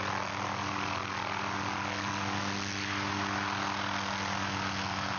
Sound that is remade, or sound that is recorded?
recorded